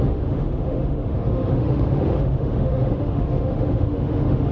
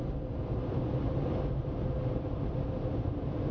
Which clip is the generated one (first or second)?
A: first